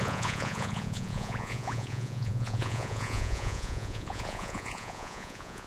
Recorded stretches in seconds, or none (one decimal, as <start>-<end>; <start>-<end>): none